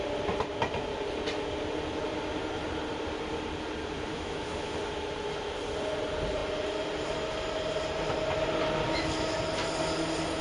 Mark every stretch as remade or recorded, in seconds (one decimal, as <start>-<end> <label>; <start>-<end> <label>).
0.0-4.1 recorded; 4.1-4.7 remade; 4.7-10.4 recorded